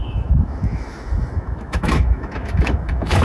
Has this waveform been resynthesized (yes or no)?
yes